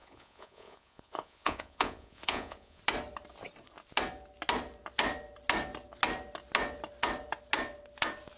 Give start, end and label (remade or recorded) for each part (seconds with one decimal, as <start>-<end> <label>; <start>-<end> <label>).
0.0-2.8 remade; 2.8-8.4 recorded

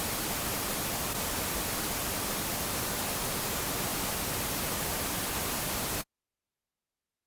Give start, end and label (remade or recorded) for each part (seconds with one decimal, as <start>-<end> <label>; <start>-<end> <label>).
0.0-7.3 recorded

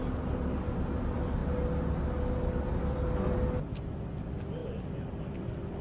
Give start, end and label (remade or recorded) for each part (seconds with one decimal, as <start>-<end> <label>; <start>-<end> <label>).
0.0-5.8 recorded